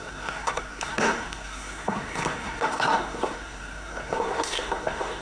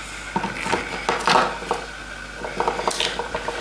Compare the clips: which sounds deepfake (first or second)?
first